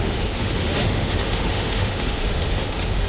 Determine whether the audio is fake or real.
fake